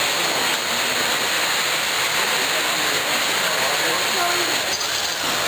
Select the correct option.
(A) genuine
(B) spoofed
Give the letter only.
A